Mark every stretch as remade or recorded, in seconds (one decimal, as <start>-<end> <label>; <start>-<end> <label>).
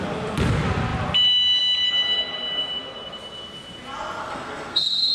0.0-4.2 recorded; 4.2-5.1 remade